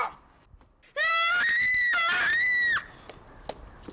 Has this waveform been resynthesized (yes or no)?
no